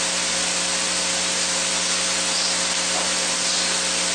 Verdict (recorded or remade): recorded